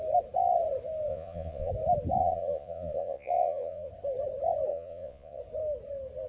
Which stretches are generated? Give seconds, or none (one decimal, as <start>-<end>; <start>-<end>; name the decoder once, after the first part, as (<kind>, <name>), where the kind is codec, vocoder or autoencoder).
1.1-1.7 (vocoder, Vocos); 2.2-3.9; 4.7-5.4